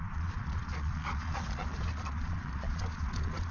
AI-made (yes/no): yes